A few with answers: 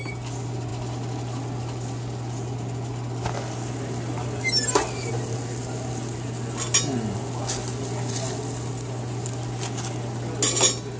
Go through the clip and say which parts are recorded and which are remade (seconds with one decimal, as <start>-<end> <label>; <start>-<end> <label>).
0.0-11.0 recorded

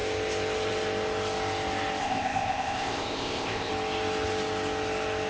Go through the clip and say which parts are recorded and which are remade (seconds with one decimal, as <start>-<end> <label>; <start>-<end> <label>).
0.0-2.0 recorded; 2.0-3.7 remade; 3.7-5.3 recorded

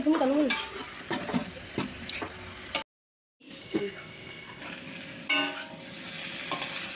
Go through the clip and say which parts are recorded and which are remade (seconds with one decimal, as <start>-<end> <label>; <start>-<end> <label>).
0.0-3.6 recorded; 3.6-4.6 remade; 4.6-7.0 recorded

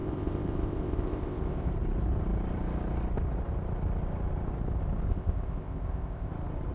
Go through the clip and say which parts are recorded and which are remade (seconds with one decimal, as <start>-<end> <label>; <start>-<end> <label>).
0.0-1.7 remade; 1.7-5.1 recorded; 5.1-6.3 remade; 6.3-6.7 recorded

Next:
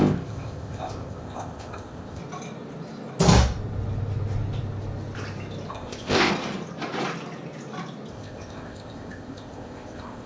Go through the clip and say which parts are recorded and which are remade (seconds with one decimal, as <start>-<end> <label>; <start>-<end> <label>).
0.0-2.2 remade; 2.2-5.7 recorded; 5.7-6.3 remade; 6.3-8.1 recorded; 8.1-10.3 remade

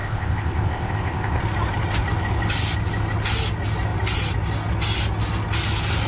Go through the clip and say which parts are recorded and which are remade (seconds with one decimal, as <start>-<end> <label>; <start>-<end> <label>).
0.0-1.4 remade; 1.4-6.1 recorded

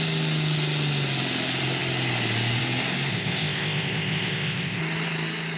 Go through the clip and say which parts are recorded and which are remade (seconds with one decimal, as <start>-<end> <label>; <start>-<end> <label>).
0.0-3.1 recorded; 3.1-4.8 remade; 4.8-5.6 recorded

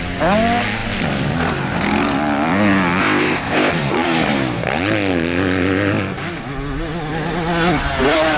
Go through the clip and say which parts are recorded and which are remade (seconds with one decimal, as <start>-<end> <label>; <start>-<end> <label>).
0.0-3.0 recorded; 3.0-3.7 remade; 3.7-8.4 recorded